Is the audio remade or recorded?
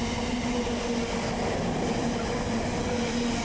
recorded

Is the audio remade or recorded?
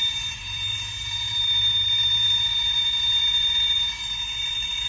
remade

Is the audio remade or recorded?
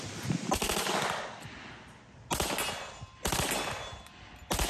recorded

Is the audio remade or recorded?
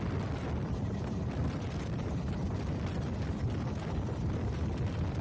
recorded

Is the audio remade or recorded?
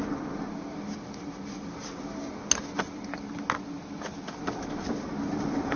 recorded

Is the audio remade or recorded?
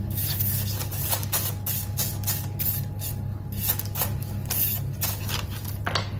recorded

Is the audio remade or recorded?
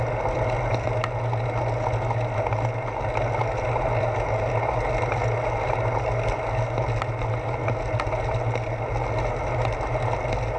recorded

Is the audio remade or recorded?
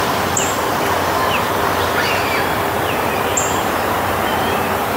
remade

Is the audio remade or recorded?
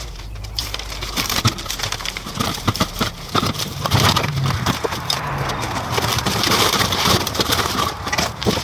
remade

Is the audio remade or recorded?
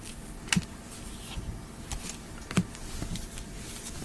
recorded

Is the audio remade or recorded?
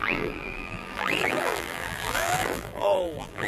remade